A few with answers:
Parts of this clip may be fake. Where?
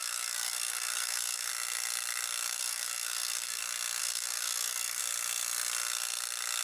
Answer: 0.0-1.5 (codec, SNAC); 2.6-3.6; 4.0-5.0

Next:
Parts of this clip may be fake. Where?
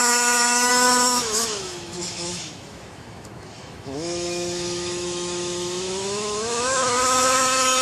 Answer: 0.0-7.8 (autoencoder, DAC-VAE)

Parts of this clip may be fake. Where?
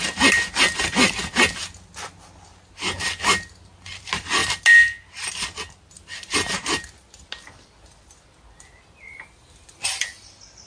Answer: none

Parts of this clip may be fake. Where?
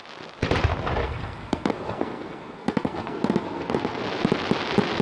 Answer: 1.0-4.0 (codec, SNAC)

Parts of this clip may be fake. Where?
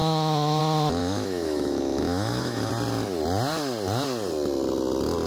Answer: 0.0-0.6 (autoencoder, DAC-VAE); 1.0-2.7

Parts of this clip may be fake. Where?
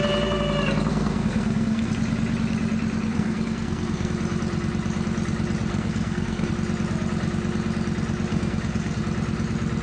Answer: 0.9-1.9 (codec, SNAC); 3.1-4.1; 5.7-6.5; 8.3-9.0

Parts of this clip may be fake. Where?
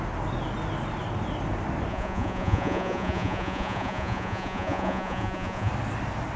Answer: 1.9-5.7 (vocoder, Vocos)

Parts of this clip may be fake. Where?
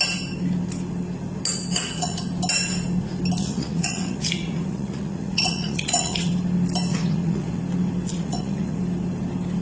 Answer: 1.7-2.2 (vocoder, Vocos); 3.4-6.3; 6.9-7.6; 8.1-8.8